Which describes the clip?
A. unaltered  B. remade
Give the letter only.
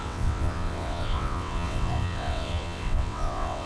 B